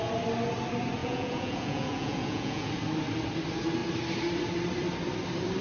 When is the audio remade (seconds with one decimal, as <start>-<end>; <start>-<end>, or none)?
1.0-2.7